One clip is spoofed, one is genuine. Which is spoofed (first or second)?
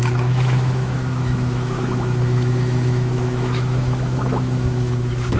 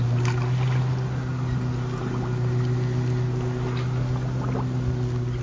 first